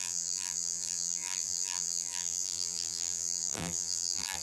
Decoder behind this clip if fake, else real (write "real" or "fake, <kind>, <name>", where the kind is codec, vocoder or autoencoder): fake, vocoder, BigVGAN v2